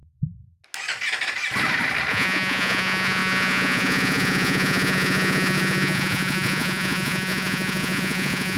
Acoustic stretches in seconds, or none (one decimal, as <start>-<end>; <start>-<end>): 0.0-2.1